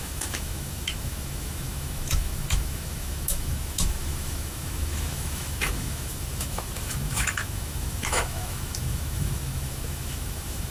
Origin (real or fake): fake